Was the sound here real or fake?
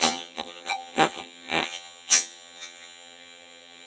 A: fake